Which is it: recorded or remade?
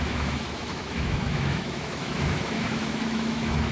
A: remade